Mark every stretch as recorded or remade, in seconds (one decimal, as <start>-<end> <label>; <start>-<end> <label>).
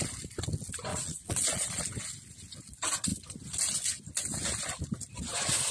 0.0-0.9 recorded; 0.9-1.8 remade; 1.8-5.7 recorded